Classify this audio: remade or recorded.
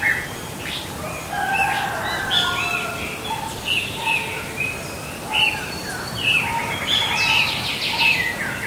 recorded